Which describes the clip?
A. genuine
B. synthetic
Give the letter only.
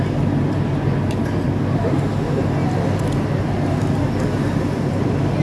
A